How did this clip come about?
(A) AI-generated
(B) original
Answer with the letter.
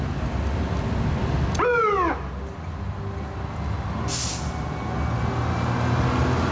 B